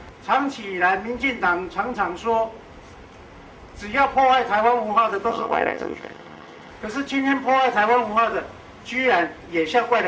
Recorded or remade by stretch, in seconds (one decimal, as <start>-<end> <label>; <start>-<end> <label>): 0.0-5.3 recorded; 5.3-6.7 remade; 6.7-10.1 recorded